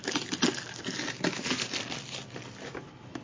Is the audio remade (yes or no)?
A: no